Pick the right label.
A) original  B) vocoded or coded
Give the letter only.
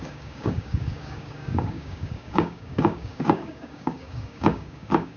B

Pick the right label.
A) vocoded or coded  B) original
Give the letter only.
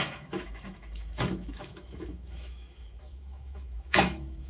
A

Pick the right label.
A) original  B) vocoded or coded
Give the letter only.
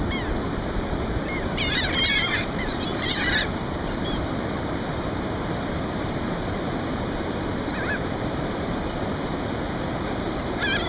B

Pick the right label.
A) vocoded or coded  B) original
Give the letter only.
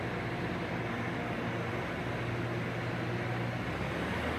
B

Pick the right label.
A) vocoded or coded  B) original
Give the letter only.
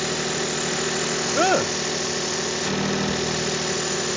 B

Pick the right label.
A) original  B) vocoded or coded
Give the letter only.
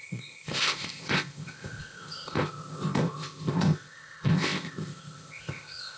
B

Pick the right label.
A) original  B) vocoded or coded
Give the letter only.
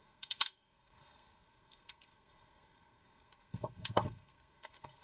B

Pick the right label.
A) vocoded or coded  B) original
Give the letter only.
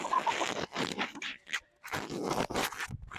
B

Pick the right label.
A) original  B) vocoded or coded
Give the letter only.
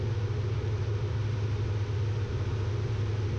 A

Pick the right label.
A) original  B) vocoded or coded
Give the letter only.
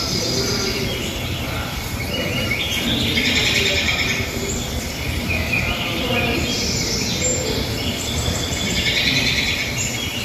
B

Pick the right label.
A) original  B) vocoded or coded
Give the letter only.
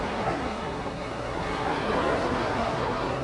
B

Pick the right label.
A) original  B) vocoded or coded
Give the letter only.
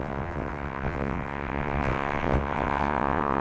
B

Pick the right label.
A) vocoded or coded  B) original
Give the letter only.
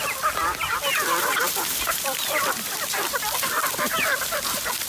A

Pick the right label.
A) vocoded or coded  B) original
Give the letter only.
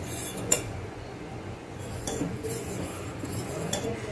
A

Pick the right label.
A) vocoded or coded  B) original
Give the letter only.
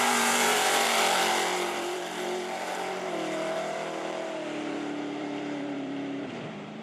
A